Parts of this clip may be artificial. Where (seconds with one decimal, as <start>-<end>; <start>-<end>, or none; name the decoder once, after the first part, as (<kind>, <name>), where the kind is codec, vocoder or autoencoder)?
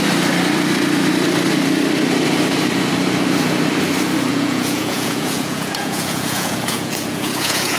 4.3-7.8 (vocoder, Vocos)